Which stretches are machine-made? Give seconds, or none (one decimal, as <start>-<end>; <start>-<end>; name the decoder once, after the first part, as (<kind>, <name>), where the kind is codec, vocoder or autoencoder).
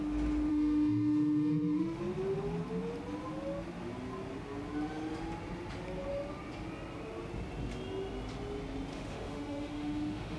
0.5-2.0 (autoencoder, DAC-VAE); 8.9-10.4